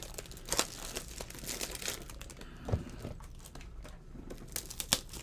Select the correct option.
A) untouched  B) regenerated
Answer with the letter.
A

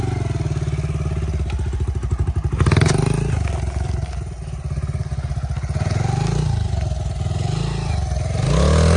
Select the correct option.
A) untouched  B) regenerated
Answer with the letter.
A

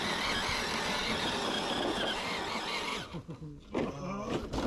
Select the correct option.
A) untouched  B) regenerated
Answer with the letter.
A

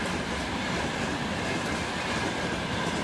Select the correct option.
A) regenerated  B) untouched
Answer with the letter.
B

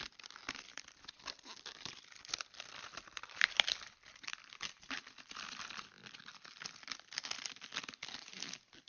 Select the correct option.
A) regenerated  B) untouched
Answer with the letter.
B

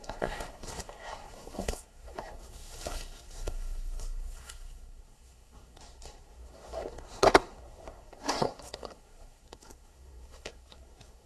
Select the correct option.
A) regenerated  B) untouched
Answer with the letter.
A